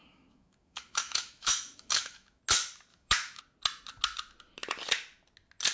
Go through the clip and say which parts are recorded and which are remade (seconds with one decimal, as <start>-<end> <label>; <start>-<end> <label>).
0.0-2.4 remade; 2.4-2.9 recorded; 2.9-3.4 remade; 3.4-5.7 recorded